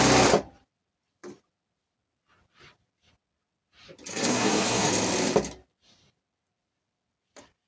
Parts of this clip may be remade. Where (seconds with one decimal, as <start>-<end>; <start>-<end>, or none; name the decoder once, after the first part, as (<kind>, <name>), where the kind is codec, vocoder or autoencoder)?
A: 4.1-4.9 (codec, SNAC)